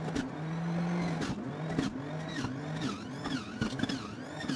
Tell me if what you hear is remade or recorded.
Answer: recorded